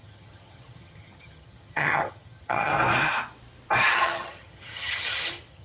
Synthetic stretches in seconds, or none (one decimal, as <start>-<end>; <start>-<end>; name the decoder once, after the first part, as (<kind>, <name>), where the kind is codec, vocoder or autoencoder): 0.0-2.7 (vocoder, HiFi-GAN); 3.9-5.6